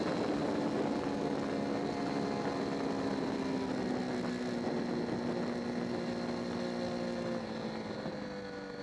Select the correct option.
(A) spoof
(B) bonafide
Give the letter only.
B